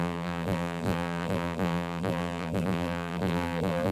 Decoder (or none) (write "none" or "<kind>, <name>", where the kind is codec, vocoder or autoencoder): vocoder, BigVGAN v2